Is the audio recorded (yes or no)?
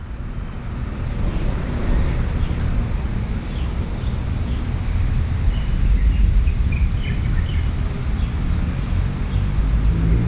yes